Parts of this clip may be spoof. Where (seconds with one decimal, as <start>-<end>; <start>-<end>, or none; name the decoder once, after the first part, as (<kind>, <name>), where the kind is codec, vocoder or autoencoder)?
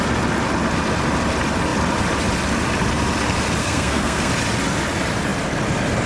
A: 3.6-4.3 (codec, SNAC)